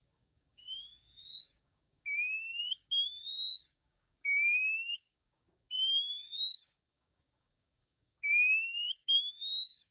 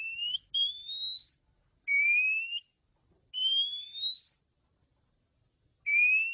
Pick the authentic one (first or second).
second